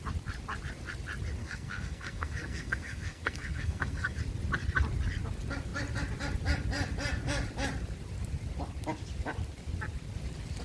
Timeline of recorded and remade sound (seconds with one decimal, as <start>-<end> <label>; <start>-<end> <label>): 0.0-1.4 recorded; 1.4-4.2 remade; 4.2-10.6 recorded